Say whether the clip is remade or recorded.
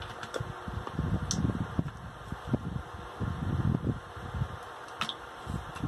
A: recorded